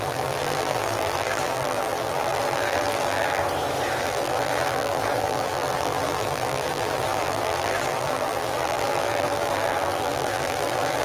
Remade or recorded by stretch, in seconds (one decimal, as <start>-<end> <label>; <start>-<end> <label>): 0.0-3.4 remade; 3.4-4.0 recorded; 4.0-11.0 remade